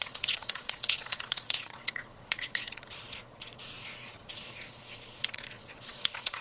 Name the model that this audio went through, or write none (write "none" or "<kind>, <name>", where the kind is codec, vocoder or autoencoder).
vocoder, Vocos